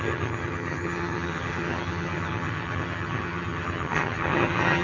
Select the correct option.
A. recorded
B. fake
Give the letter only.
B